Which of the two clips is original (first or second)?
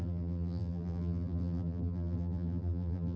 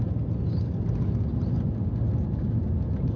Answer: second